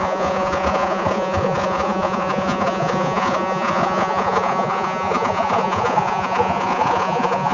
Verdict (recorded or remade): remade